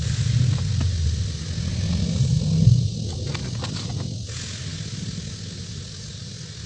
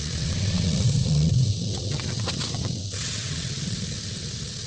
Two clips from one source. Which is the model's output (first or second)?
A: second